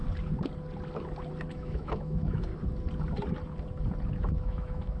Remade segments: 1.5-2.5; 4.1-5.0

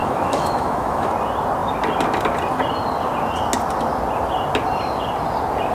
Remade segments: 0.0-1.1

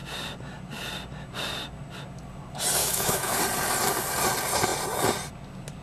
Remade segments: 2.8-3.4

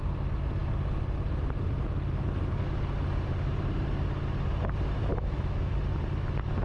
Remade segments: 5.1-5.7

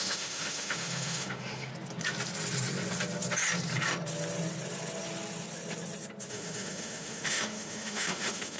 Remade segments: 0.0-1.7; 6.3-8.6

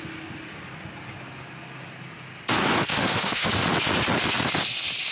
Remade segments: 2.9-3.5